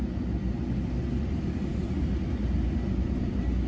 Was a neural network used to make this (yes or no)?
no